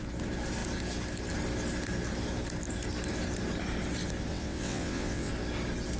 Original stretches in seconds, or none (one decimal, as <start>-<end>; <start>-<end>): 0.0-4.3; 5.3-6.0